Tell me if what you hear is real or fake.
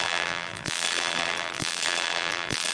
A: fake